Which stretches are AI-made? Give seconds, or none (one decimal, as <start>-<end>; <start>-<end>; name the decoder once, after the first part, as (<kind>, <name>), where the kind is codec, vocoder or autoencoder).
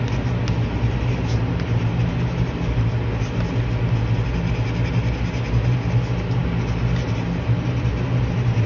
none